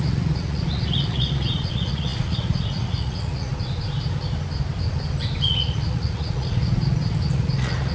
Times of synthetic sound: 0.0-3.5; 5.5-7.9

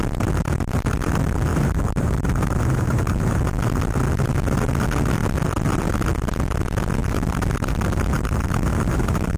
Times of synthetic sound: 1.5-3.4; 7.0-9.4